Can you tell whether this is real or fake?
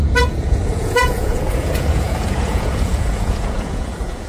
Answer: fake